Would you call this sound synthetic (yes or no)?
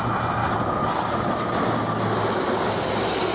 no